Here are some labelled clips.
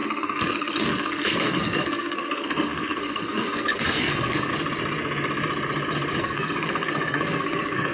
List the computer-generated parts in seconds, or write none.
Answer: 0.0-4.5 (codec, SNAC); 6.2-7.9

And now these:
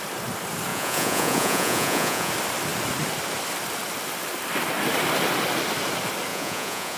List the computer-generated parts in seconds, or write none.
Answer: 0.7-2.3 (vocoder, Vocos); 6.3-7.0

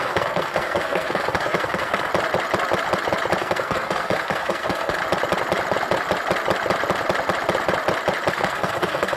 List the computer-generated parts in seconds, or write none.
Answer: 0.0-2.1 (codec, SNAC); 3.4-5.0; 8.3-9.2

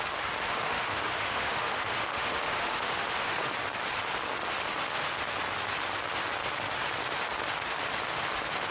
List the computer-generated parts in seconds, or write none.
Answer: 0.4-3.5 (autoencoder, DAC-VAE)

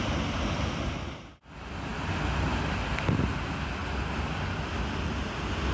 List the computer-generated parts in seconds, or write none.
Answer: none

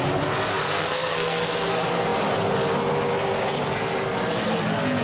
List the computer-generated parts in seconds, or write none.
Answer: 0.5-1.5 (codec, SNAC)

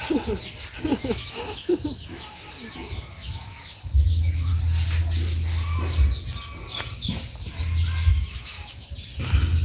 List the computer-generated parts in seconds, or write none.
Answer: 0.9-4.5 (autoencoder, DAC-VAE); 8.1-8.9